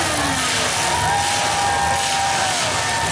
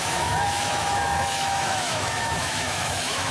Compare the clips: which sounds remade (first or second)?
second